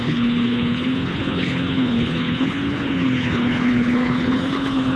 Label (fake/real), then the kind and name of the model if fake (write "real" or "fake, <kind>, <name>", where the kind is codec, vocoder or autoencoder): fake, codec, HILCodec